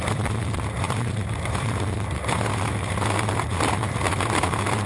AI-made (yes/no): yes